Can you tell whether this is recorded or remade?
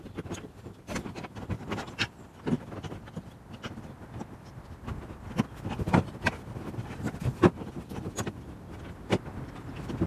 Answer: recorded